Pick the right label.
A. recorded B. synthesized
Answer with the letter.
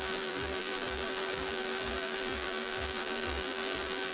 B